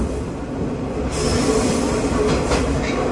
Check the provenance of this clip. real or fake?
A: real